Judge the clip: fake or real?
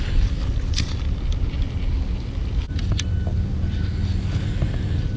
real